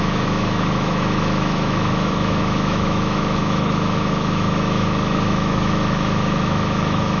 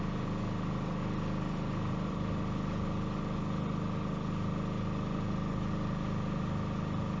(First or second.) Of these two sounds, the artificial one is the first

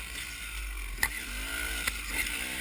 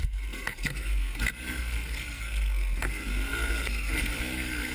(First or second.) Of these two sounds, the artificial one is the second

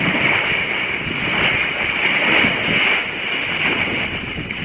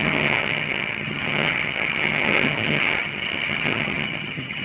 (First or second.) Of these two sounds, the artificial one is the second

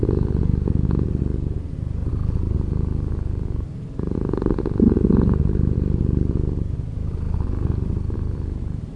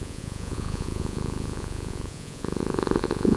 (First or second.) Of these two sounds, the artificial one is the second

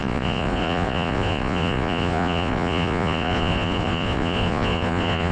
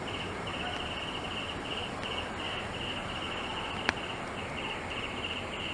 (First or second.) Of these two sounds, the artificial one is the first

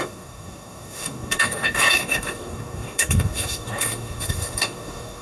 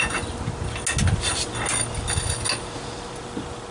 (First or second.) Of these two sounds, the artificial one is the first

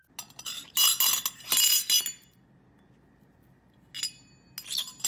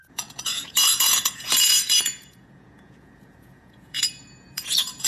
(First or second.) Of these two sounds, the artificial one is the second